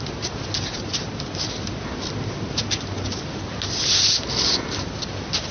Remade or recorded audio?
recorded